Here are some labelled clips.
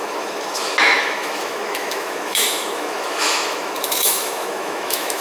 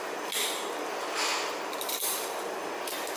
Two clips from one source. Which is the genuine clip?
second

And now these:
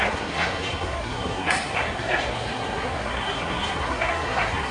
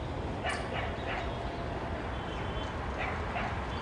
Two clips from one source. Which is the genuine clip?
second